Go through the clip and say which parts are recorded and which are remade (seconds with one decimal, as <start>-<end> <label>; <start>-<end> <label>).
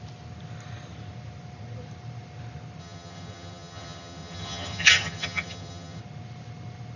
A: 0.0-2.8 recorded; 2.8-6.0 remade; 6.0-7.0 recorded